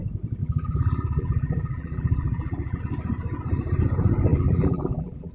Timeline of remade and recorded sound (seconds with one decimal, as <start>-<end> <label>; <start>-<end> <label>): 0.0-0.4 recorded; 0.4-2.8 remade; 2.8-4.3 recorded; 4.3-5.3 remade